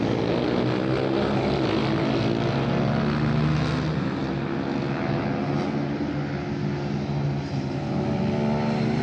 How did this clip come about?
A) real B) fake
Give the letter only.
A